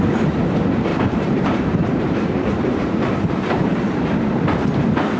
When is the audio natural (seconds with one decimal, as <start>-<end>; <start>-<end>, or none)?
0.0-0.9; 4.0-5.2